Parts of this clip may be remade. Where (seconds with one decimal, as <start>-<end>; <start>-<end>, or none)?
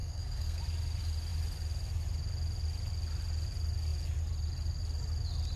0.0-0.6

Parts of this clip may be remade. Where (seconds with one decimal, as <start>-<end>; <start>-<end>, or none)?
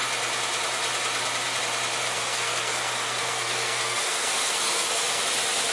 2.0-5.2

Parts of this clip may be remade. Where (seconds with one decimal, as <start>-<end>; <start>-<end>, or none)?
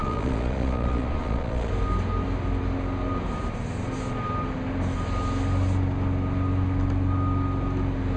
0.0-1.7